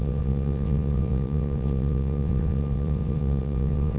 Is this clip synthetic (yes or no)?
yes